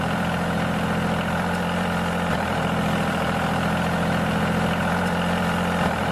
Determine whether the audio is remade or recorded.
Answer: remade